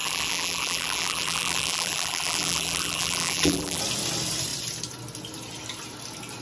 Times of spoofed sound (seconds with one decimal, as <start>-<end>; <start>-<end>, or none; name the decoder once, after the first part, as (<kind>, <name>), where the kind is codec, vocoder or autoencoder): 0.0-3.8 (vocoder, BigVGAN v2)